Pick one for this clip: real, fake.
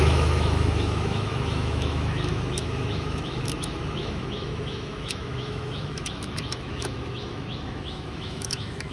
fake